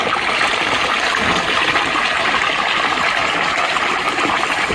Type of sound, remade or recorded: recorded